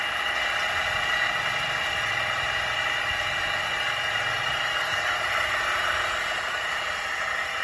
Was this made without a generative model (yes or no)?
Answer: no